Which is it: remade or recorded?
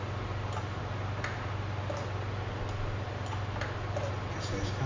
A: recorded